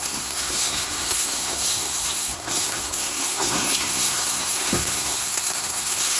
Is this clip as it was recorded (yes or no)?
no